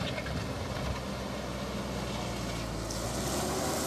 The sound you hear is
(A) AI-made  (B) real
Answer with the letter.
B